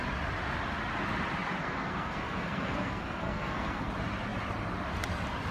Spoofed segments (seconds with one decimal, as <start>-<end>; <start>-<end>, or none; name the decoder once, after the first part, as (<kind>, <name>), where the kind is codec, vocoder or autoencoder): 1.6-3.9 (codec, SNAC)